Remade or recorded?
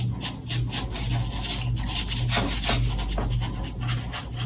recorded